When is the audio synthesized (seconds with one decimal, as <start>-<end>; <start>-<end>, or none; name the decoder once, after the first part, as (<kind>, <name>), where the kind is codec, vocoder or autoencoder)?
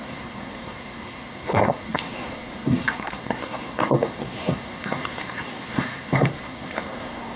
0.0-7.4 (codec, SNAC)